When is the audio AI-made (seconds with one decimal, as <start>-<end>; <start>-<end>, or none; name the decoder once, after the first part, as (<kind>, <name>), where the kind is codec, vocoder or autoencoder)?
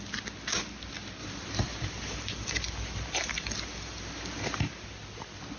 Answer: 1.2-4.6 (vocoder, BigVGAN v2)